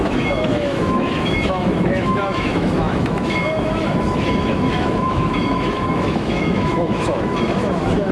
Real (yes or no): no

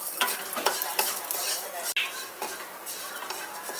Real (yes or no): yes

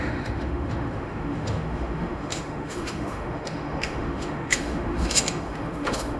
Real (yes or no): no